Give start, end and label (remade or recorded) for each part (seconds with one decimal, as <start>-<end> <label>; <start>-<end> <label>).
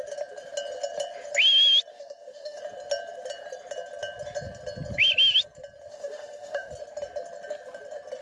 0.0-1.9 recorded; 1.9-2.6 remade; 2.6-5.9 recorded; 5.9-6.7 remade; 6.7-8.2 recorded